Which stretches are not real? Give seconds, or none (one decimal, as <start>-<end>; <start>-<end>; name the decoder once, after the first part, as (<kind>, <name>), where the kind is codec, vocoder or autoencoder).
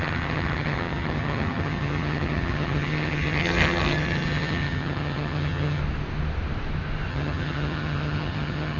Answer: 0.0-5.8 (vocoder, HiFi-GAN); 7.1-8.8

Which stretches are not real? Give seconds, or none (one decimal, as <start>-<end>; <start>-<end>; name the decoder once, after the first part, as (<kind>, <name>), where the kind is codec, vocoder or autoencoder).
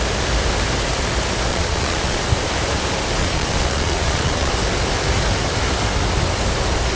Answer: 1.5-2.2 (vocoder, Vocos); 3.2-4.5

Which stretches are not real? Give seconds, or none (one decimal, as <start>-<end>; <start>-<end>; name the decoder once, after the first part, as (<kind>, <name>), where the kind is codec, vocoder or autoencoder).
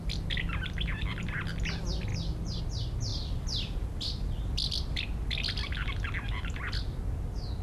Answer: 3.1-5.0 (vocoder, BigVGAN v2)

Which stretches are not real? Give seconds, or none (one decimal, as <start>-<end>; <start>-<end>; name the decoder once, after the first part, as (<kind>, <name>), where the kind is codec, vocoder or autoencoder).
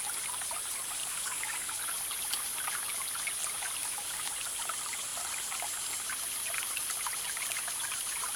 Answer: 1.0-1.8 (codec, DAC); 3.8-4.3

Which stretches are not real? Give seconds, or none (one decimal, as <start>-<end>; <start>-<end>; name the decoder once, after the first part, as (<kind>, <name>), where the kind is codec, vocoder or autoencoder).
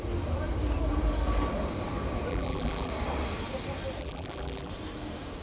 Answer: 2.3-2.9 (vocoder, BigVGAN v2); 4.0-4.7